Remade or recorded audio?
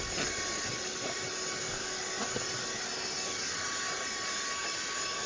recorded